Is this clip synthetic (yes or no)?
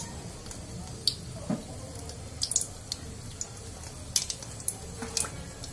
no